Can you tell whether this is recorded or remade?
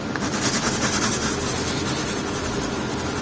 recorded